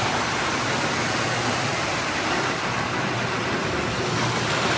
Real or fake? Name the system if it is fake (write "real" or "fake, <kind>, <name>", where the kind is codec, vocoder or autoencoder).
fake, vocoder, BigVGAN v2